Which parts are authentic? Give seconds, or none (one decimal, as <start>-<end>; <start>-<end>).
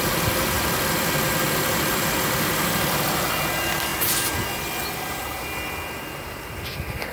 0.0-7.1